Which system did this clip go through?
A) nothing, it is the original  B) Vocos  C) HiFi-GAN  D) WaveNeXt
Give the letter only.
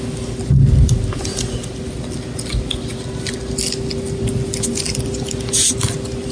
A